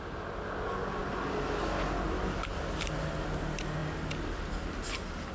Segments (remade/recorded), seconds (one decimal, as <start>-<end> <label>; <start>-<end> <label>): 0.0-5.3 recorded